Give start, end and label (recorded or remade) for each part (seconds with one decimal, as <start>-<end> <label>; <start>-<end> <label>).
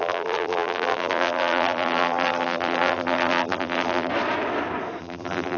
0.0-4.1 remade; 4.1-5.0 recorded; 5.0-5.6 remade